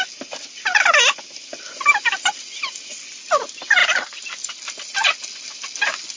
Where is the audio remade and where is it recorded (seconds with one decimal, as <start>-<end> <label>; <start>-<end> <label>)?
0.0-6.2 recorded